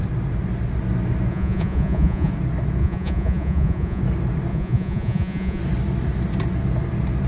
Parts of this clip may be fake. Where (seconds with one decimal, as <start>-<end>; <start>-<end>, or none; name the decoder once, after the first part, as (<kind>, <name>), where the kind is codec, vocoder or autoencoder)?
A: 1.3-2.3 (vocoder, Vocos); 2.8-4.0; 4.5-5.6